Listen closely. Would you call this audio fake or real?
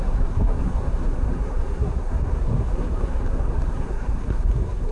fake